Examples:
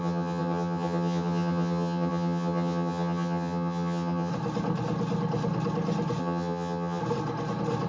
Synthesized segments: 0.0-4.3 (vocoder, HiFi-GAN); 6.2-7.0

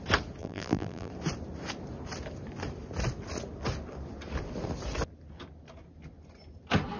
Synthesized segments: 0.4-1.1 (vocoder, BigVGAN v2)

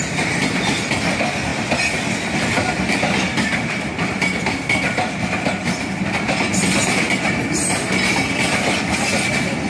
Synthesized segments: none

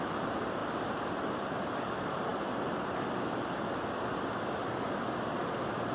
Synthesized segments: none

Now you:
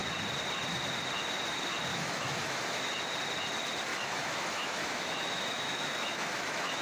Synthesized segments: 1.9-2.9 (autoencoder, DAC-VAE); 3.9-6.8